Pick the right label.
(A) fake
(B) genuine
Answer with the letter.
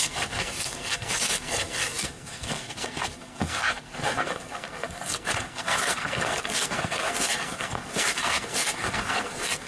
A